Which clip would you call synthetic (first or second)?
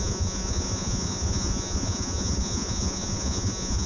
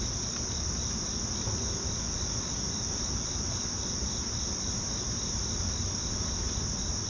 first